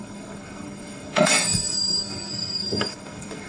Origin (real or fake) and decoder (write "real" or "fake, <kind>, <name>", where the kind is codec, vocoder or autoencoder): fake, codec, SNAC